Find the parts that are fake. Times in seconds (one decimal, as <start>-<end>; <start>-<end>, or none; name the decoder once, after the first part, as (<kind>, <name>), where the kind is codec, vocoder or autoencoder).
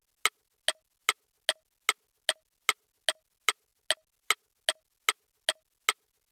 none